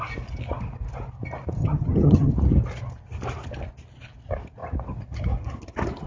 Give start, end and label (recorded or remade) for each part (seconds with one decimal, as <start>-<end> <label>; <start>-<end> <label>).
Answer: 0.0-1.6 recorded; 1.6-2.3 remade; 2.3-6.1 recorded